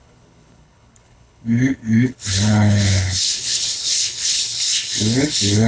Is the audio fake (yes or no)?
yes